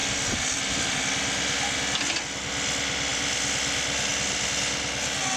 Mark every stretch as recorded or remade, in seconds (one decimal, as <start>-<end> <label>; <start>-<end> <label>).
0.0-5.4 recorded